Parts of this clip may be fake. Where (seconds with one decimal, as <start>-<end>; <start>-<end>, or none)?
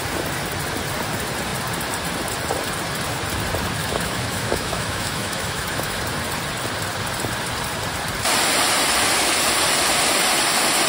3.8-6.0